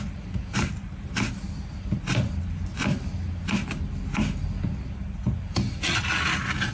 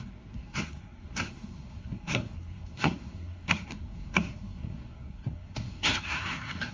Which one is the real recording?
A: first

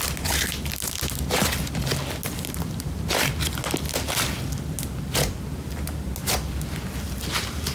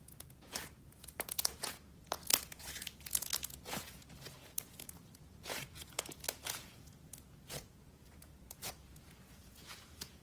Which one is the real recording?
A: first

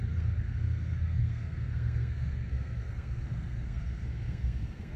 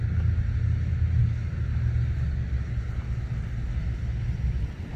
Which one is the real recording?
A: second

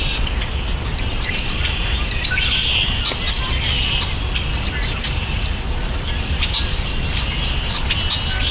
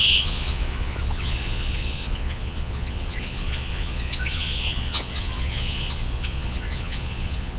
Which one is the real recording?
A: first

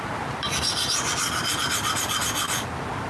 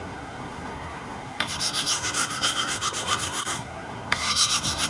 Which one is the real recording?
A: first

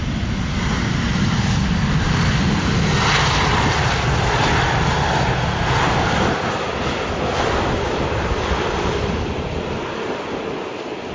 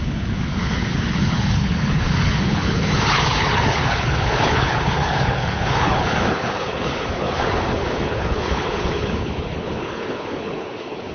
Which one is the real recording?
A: first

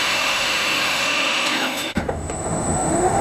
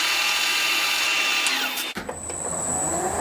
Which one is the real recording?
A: second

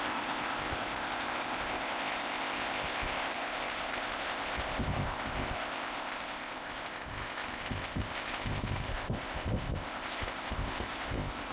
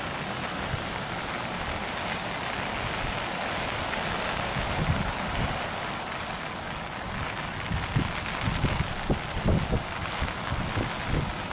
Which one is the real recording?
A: second